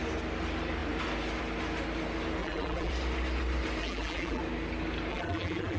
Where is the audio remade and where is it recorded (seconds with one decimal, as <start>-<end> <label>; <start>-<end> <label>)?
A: 0.0-2.4 recorded; 2.4-2.9 remade; 2.9-3.8 recorded; 3.8-4.4 remade; 4.4-5.1 recorded; 5.1-5.8 remade